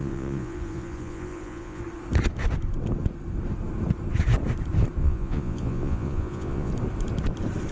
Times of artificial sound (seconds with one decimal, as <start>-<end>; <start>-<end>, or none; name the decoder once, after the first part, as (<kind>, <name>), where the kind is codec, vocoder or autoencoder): 0.0-1.8 (vocoder, Vocos); 5.0-6.7